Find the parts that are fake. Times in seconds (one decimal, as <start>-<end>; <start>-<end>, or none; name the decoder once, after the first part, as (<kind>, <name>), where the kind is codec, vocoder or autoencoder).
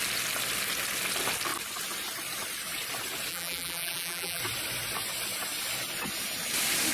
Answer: 3.3-4.4 (vocoder, BigVGAN v2)